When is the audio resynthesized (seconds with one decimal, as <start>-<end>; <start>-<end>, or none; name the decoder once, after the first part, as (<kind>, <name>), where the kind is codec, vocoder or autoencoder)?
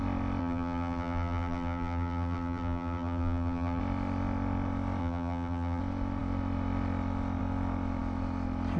0.4-3.8 (vocoder, BigVGAN v2); 5.0-5.8